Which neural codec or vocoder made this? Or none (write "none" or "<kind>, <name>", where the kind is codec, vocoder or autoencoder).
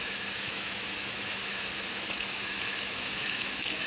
autoencoder, DAC-VAE